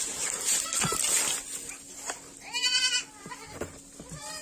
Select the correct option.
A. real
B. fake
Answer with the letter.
A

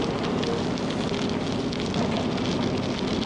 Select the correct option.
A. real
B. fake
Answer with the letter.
A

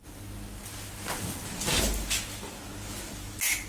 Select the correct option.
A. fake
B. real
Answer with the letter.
B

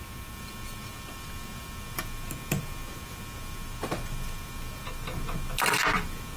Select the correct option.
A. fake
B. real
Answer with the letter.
B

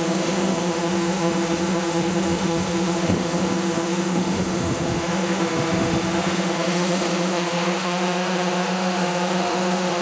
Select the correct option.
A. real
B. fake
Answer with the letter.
B